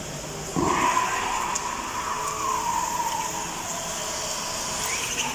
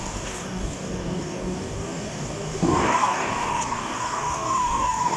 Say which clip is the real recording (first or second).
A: first